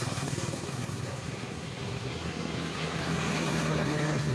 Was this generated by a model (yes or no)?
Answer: yes